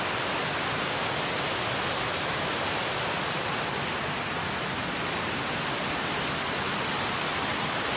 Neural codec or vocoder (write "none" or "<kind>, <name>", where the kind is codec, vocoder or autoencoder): none